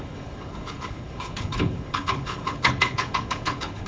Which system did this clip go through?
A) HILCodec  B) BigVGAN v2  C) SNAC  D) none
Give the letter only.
A